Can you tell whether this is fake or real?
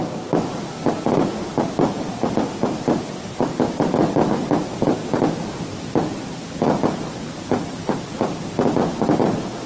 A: real